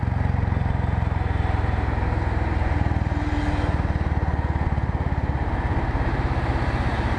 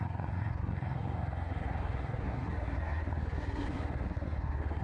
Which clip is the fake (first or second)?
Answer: second